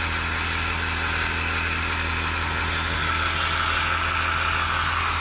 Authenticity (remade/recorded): recorded